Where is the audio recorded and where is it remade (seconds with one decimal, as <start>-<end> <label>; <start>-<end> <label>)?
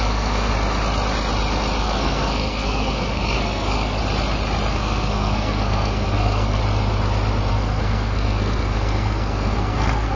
0.0-0.5 remade; 0.5-1.8 recorded; 1.8-4.0 remade; 4.0-4.7 recorded; 4.7-6.6 remade; 6.6-7.5 recorded; 7.5-10.2 remade